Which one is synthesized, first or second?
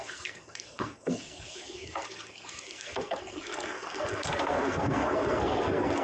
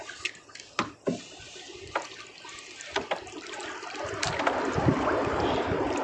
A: first